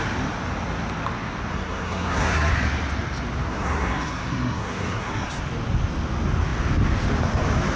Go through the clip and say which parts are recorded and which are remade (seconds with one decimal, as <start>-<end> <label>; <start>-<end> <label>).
0.0-1.5 recorded; 1.5-2.5 remade; 2.5-3.5 recorded; 3.5-5.4 remade; 5.4-7.8 recorded